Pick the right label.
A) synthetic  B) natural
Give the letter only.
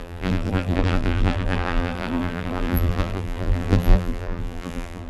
A